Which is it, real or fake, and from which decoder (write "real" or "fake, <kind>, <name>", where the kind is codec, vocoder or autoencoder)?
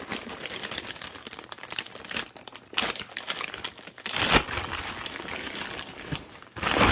real